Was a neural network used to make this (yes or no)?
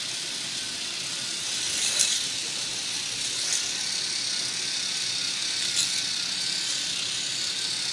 no